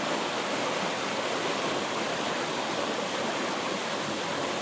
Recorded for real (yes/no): yes